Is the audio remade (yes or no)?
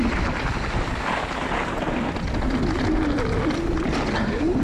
no